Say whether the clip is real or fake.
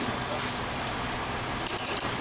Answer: real